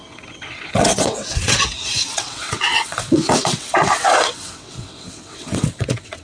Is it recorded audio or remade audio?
remade